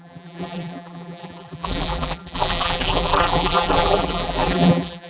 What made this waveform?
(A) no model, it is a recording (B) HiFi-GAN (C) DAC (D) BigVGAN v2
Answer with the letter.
D